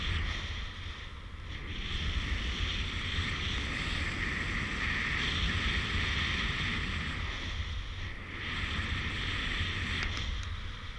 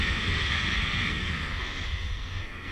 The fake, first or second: second